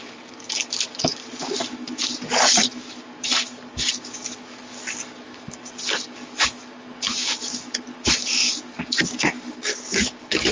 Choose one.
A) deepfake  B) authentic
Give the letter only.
A